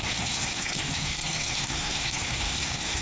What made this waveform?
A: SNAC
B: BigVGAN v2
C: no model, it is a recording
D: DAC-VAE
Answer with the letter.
A